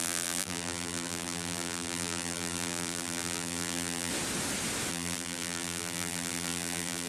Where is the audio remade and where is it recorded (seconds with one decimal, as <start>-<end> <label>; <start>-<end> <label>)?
0.0-4.1 remade; 4.1-4.9 recorded; 4.9-7.1 remade